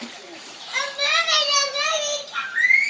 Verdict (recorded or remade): remade